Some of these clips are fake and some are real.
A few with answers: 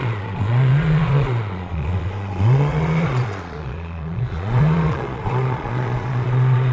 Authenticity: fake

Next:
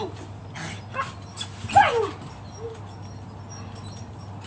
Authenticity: real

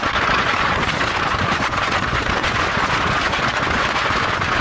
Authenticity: fake